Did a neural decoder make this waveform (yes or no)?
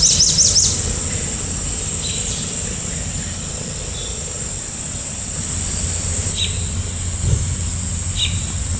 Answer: no